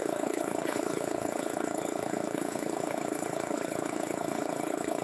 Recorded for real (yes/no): no